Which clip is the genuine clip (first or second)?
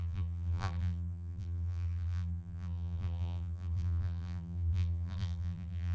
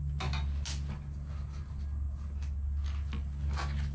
second